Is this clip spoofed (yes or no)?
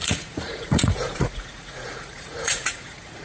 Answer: yes